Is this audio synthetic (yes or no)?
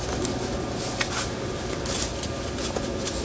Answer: no